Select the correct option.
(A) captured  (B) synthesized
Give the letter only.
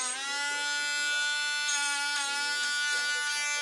A